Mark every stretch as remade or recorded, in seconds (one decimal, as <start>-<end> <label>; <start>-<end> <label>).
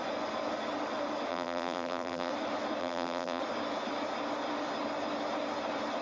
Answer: 0.0-1.3 recorded; 1.3-2.3 remade; 2.3-2.8 recorded; 2.8-3.4 remade; 3.4-6.0 recorded